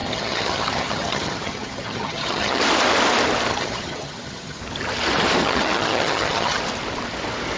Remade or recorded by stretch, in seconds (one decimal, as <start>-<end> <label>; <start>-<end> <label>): 0.0-2.6 remade; 2.6-3.5 recorded; 3.5-4.6 remade; 4.6-5.4 recorded; 5.4-6.6 remade; 6.6-7.6 recorded

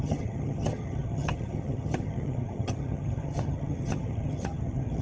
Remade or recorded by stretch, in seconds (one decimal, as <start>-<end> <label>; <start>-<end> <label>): 0.0-5.0 remade

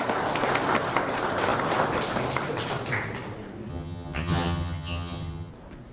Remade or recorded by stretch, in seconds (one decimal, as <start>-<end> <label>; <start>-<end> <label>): 0.0-3.7 recorded; 3.7-5.5 remade; 5.5-5.9 recorded

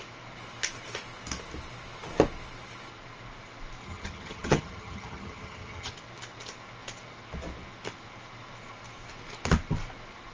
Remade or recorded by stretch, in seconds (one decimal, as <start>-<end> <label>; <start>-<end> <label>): 0.0-3.8 recorded; 3.8-5.9 remade; 5.9-10.3 recorded

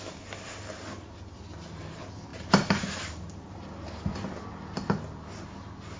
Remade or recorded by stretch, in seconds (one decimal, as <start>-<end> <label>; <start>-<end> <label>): 0.0-6.0 recorded

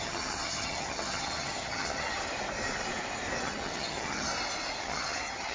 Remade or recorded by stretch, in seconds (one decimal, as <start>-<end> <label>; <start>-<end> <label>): 0.0-2.2 remade; 2.2-3.4 recorded; 3.4-4.3 remade; 4.3-4.8 recorded; 4.8-5.5 remade

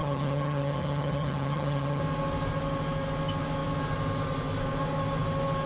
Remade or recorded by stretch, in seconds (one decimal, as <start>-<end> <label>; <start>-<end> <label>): 0.0-2.0 remade; 2.0-5.7 recorded

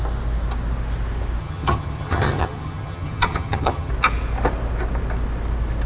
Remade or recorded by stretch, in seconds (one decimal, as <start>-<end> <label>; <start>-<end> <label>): 0.0-1.4 recorded; 1.4-3.9 remade; 3.9-5.9 recorded